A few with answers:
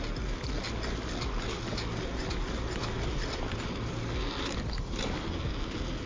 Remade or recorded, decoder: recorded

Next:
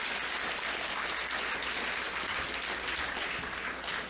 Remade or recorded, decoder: recorded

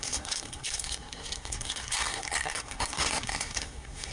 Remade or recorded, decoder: remade, codec, SNAC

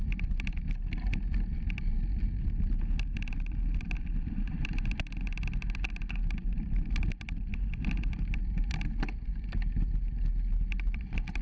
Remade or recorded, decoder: recorded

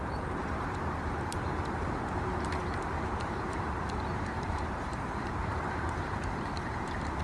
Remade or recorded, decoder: remade, vocoder, BigVGAN v2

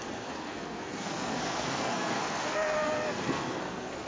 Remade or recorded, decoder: remade, codec, SNAC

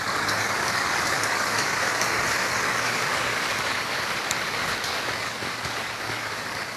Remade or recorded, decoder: remade, codec, DAC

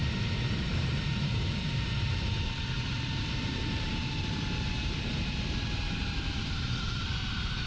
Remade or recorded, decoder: remade, vocoder, BigVGAN v2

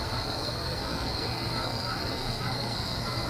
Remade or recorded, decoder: remade, codec, SNAC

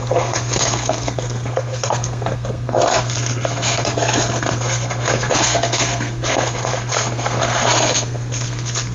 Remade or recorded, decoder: remade, codec, SNAC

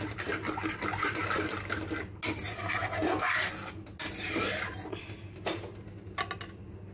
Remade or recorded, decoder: recorded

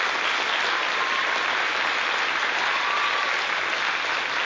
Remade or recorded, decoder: recorded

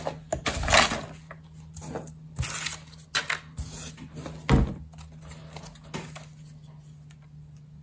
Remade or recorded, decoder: recorded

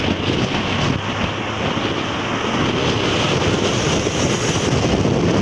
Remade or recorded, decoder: recorded